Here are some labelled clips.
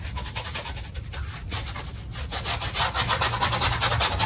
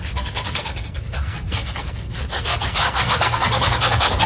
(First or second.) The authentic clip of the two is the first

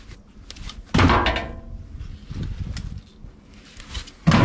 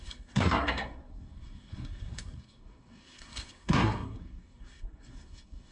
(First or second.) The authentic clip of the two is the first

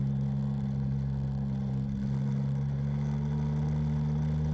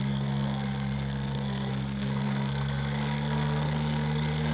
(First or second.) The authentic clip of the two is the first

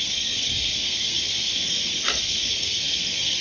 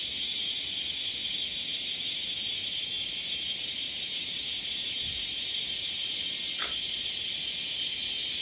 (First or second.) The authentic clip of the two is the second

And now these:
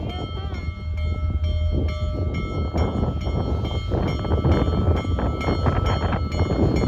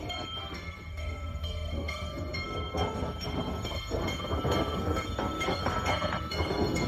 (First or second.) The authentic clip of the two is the first